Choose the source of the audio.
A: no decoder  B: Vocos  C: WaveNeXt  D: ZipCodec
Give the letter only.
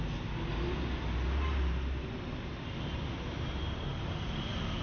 A